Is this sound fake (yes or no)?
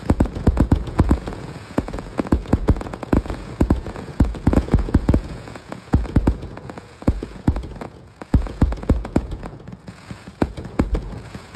yes